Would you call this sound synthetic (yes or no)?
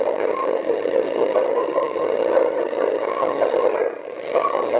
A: yes